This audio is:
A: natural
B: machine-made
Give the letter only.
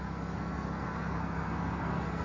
B